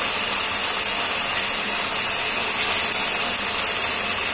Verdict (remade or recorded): recorded